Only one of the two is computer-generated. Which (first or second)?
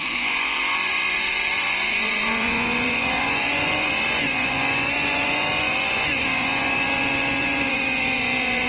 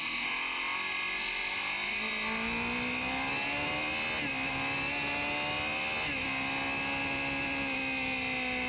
first